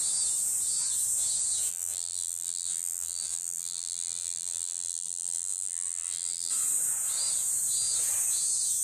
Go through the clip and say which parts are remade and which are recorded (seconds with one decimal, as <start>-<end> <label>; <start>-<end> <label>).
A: 0.0-1.7 recorded; 1.7-6.5 remade; 6.5-8.8 recorded

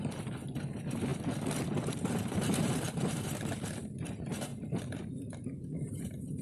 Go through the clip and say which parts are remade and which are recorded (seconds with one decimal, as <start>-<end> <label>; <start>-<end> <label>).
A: 0.0-1.1 remade; 1.1-2.1 recorded; 2.1-6.4 remade

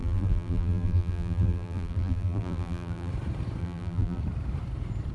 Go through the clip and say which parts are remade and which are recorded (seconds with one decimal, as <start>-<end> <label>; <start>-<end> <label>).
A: 0.0-3.1 remade; 3.1-3.6 recorded; 3.6-4.2 remade; 4.2-5.1 recorded

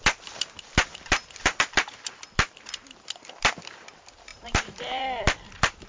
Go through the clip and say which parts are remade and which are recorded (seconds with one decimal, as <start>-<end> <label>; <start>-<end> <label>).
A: 0.0-4.3 recorded; 4.3-5.0 remade; 5.0-5.9 recorded

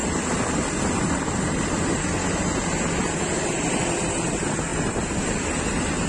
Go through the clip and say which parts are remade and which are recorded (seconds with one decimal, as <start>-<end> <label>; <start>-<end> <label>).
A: 0.0-6.1 recorded

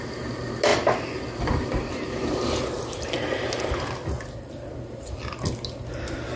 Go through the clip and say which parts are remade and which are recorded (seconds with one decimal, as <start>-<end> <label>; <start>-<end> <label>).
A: 0.0-0.7 recorded; 0.7-4.5 remade; 4.5-6.4 recorded

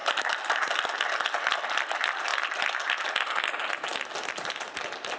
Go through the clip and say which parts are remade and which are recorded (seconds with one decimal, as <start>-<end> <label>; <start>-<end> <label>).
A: 0.0-5.2 recorded